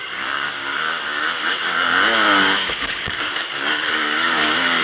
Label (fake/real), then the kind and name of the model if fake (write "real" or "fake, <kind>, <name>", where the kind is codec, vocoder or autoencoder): fake, codec, DAC